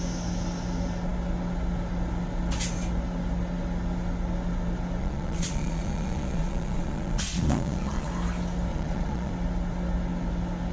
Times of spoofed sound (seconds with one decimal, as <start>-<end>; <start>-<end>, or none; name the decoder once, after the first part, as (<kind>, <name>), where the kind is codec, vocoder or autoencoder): 5.0-8.1 (vocoder, Vocos); 8.7-9.3